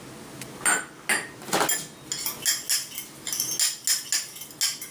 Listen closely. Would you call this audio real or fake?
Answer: real